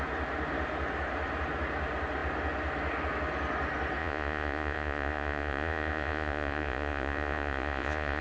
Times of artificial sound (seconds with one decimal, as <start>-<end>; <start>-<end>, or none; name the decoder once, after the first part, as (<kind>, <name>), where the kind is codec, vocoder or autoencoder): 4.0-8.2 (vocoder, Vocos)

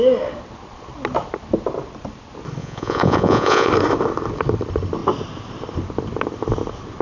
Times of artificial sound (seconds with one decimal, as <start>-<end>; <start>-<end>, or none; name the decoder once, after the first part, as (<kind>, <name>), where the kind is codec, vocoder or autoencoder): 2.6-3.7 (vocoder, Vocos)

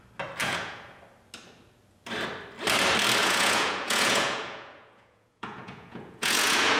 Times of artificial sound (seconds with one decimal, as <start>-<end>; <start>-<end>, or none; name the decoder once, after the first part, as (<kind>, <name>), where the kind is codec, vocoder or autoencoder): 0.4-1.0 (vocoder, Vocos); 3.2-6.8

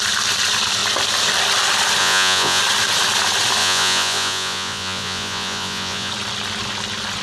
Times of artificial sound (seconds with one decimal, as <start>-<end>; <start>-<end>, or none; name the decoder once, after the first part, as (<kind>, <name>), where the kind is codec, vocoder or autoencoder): 2.0-2.6 (vocoder, Vocos); 3.6-6.1

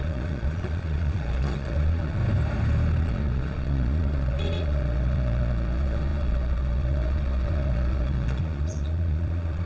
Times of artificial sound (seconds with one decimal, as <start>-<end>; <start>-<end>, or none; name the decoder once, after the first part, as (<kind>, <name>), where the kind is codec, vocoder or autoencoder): 0.0-2.2 (vocoder, Vocos); 3.0-9.7

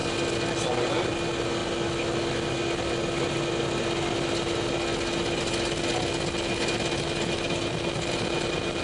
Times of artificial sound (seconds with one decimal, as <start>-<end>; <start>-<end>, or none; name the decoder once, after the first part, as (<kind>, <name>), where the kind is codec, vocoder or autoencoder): none

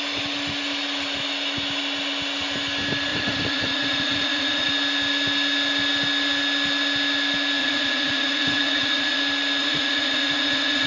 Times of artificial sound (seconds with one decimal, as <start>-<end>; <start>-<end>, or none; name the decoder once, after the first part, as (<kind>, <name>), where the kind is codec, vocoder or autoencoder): 3.1-4.7 (vocoder, Vocos); 7.6-9.2; 9.6-10.9